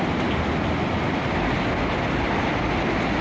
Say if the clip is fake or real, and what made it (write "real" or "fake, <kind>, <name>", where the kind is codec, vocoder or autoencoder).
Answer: real